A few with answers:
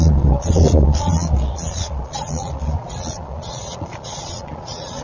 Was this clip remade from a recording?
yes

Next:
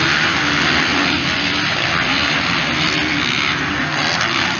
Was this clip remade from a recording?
no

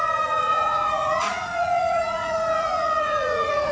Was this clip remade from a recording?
yes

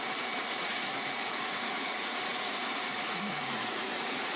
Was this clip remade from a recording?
yes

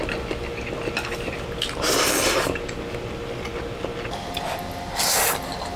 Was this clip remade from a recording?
no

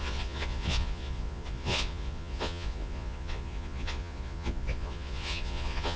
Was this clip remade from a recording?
yes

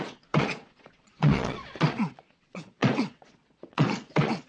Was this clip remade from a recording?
yes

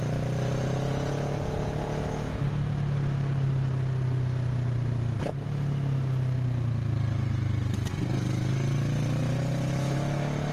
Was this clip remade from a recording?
no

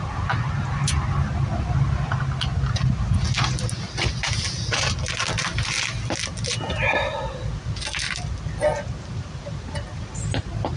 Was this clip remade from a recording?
no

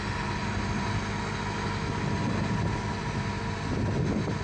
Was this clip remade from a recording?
no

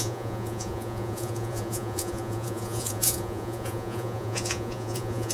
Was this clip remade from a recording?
yes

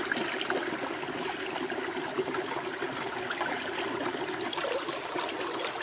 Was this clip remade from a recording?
no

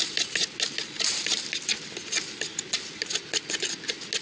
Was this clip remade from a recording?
no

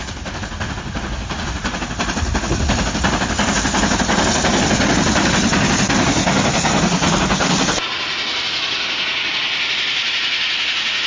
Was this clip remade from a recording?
no